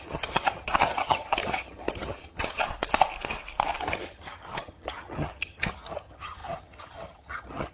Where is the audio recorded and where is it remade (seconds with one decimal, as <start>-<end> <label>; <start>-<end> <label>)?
0.0-2.6 remade; 2.6-3.8 recorded; 3.8-7.7 remade